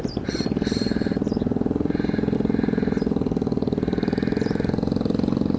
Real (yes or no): yes